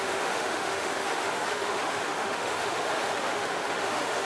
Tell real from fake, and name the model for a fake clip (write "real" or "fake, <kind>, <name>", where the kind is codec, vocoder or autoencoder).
fake, autoencoder, DAC-VAE